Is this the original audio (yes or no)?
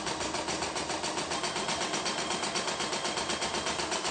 yes